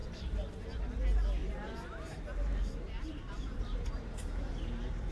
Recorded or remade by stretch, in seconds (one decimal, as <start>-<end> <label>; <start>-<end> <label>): 0.0-0.8 remade; 0.8-1.4 recorded; 1.4-4.5 remade; 4.5-5.1 recorded